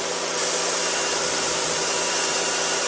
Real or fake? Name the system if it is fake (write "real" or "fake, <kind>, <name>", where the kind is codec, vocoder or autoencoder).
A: fake, vocoder, BigVGAN v2